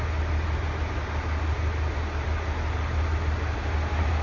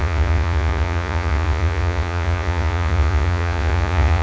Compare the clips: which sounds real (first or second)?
first